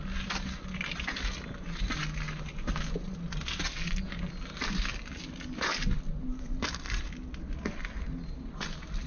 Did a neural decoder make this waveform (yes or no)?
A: no